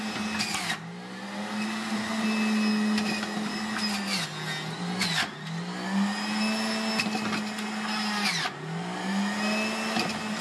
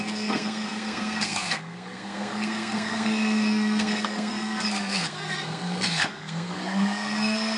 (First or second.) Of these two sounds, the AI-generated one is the second